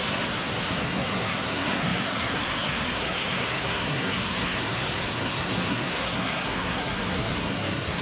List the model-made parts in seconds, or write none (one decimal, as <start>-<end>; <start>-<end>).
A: 0.0-8.0